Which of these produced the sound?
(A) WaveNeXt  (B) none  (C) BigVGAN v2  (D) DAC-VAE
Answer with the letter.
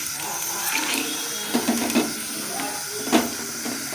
B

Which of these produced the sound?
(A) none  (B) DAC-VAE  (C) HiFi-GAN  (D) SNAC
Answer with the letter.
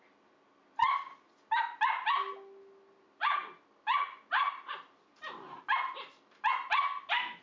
A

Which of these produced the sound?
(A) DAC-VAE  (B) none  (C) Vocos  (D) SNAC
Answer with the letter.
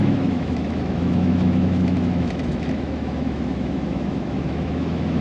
A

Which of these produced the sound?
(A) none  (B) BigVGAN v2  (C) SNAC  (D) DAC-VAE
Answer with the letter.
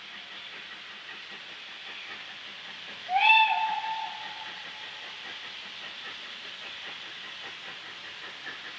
A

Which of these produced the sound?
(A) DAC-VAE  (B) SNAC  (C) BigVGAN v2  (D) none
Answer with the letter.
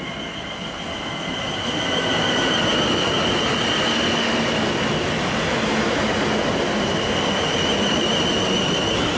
D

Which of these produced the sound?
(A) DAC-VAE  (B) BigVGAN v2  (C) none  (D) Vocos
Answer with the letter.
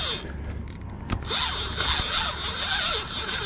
C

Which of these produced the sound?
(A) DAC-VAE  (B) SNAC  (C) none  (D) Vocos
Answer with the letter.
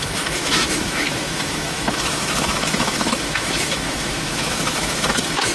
A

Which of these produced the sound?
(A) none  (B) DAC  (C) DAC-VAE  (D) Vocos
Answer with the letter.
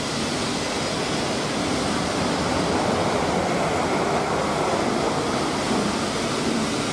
A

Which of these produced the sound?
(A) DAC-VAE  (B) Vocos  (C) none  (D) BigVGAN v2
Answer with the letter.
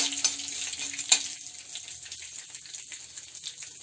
C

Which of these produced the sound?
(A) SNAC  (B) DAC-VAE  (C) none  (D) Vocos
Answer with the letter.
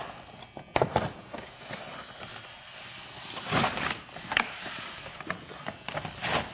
C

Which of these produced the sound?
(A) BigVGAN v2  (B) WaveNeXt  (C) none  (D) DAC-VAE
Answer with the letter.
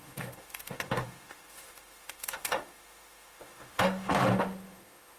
D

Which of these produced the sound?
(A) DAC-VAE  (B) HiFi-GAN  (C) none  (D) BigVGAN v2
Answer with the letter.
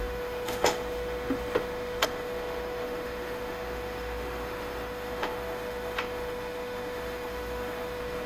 A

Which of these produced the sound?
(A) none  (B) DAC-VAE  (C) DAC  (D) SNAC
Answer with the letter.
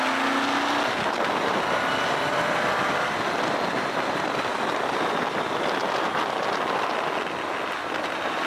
A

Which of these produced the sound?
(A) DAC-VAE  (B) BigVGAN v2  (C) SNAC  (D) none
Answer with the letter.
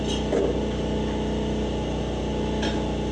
D